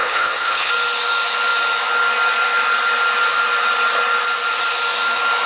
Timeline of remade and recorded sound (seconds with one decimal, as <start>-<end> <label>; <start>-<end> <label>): 0.0-0.7 remade; 0.7-5.5 recorded